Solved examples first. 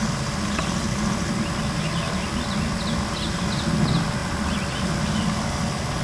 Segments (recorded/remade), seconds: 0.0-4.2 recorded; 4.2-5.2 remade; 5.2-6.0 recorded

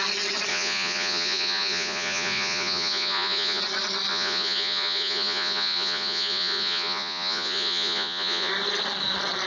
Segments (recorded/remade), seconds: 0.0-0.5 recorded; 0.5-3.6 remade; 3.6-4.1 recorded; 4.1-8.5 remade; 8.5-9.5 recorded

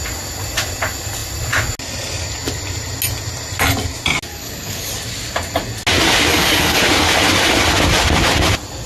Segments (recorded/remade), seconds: 0.0-4.3 recorded; 4.3-4.9 remade; 4.9-6.3 recorded; 6.3-6.8 remade; 6.8-8.9 recorded